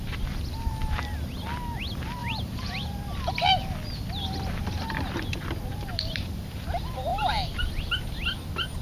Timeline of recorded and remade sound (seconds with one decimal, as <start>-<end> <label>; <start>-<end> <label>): 0.0-2.2 recorded; 2.2-2.9 remade; 2.9-5.7 recorded; 5.7-6.2 remade; 6.2-7.1 recorded; 7.1-7.9 remade; 7.9-8.8 recorded